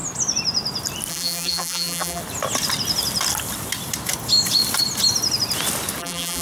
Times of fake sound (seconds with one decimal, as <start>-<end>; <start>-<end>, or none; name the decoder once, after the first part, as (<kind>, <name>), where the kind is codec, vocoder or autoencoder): 1.1-2.2 (vocoder, BigVGAN v2); 6.0-6.4